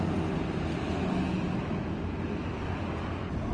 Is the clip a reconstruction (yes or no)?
no